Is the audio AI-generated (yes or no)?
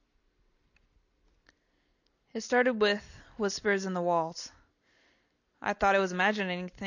no